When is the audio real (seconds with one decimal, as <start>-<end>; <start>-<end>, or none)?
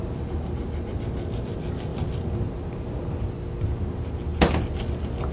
0.0-5.3